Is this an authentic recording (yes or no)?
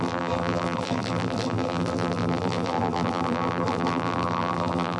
no